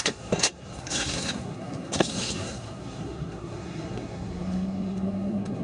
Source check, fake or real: fake